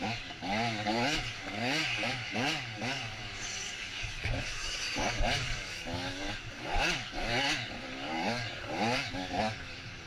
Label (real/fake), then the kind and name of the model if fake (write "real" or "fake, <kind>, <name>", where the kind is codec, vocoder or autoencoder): fake, codec, DAC